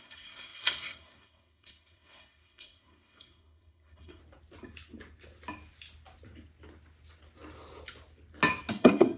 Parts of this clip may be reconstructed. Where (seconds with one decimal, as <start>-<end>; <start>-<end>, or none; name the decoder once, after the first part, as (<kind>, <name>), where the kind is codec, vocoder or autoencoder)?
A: 0.0-4.2 (codec, SNAC); 8.7-9.2